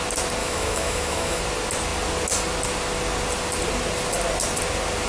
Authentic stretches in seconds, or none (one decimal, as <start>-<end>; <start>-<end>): 0.0-0.4; 1.4-5.1